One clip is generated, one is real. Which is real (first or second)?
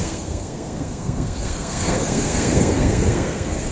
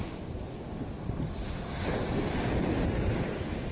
second